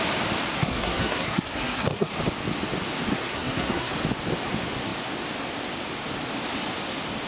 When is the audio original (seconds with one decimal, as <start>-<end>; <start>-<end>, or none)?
0.0-0.5; 2.1-3.1; 3.9-7.3

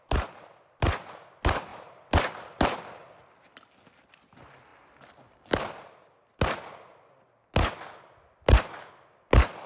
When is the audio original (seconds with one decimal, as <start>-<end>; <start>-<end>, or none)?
0.0-9.7